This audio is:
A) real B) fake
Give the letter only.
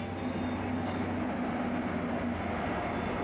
A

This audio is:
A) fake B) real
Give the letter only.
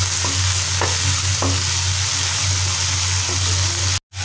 B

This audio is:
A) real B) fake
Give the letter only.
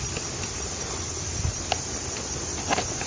A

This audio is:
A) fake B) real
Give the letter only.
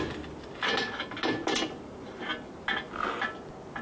B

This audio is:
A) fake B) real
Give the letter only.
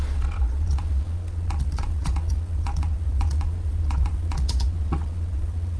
A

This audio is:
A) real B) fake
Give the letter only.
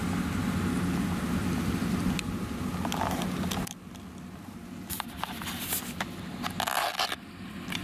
A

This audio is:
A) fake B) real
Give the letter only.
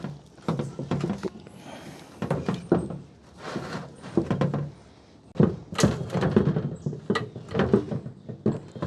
B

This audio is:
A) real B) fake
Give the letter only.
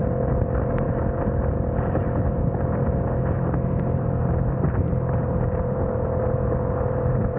B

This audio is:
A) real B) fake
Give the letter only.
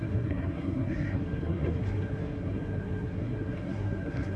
B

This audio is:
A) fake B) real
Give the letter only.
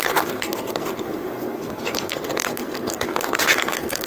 A